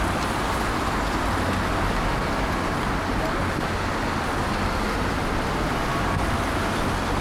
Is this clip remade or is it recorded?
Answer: recorded